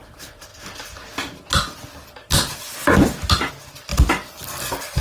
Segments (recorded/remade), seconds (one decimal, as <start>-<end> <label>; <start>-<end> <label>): 0.0-5.0 recorded